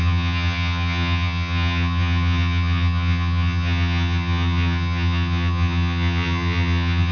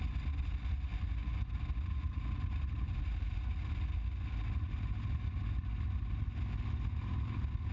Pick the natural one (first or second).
second